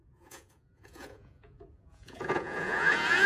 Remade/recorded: remade